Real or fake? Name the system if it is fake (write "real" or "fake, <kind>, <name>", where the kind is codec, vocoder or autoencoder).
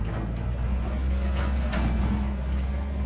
fake, codec, SNAC